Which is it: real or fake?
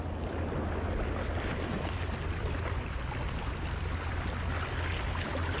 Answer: real